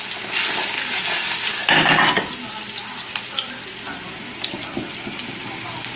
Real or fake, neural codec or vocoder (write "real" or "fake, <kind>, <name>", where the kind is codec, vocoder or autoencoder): real